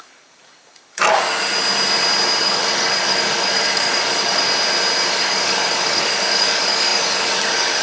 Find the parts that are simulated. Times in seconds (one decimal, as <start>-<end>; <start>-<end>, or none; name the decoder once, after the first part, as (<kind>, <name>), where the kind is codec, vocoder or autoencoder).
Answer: 0.0-1.0 (codec, DAC); 2.4-4.4; 5.1-7.8